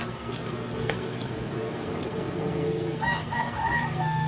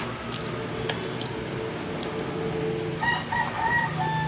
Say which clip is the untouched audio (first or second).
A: second